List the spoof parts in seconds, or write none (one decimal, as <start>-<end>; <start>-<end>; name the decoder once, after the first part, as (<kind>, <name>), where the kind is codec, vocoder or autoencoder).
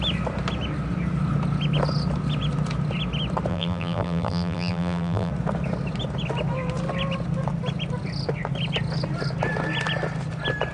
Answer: 3.5-5.3 (vocoder, BigVGAN v2)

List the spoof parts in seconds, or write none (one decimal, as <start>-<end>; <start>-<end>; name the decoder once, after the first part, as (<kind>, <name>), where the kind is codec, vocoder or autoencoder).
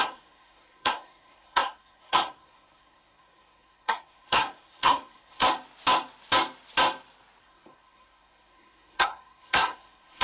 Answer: 0.0-5.4 (codec, SNAC); 7.4-10.2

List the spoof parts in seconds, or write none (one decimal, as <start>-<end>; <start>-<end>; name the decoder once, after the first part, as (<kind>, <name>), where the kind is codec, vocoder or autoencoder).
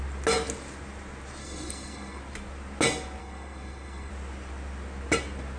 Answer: 1.4-2.2 (codec, SNAC); 3.2-4.1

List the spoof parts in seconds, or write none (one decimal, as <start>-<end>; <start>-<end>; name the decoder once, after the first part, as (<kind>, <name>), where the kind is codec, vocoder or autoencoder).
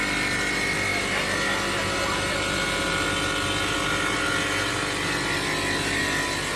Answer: none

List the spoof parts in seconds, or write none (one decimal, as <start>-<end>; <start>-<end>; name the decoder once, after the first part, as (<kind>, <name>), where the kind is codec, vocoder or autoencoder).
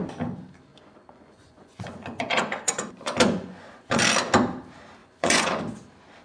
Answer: 0.7-4.0 (vocoder, Vocos); 5.0-5.6